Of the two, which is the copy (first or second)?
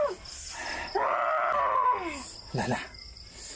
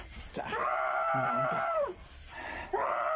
second